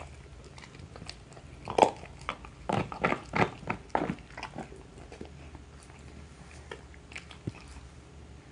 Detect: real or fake real